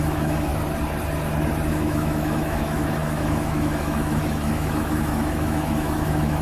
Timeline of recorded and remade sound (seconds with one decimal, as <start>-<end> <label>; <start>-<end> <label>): 0.0-0.5 remade; 0.5-1.7 recorded; 1.7-6.4 remade